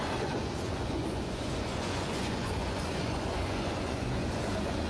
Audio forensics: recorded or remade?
remade